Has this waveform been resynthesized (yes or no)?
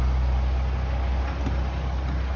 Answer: no